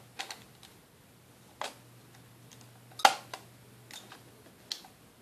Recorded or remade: recorded